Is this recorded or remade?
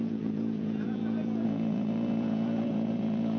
remade